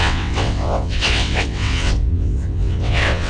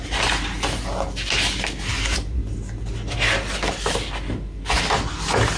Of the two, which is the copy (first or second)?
first